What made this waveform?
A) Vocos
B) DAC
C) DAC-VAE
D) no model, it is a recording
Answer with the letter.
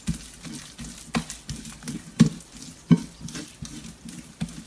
D